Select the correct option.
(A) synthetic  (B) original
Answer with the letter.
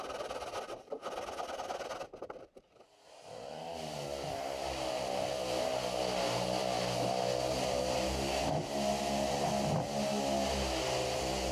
B